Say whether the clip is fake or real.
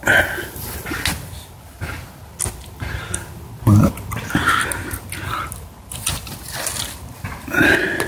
real